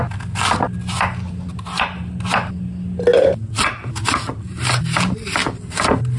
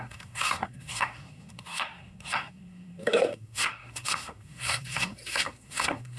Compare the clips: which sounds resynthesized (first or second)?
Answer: second